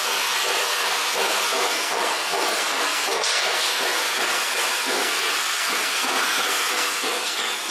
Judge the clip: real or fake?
fake